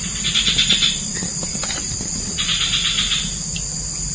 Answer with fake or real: real